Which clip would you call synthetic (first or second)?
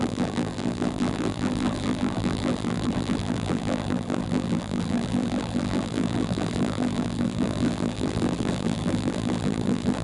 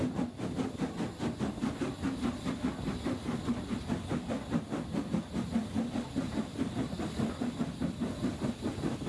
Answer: first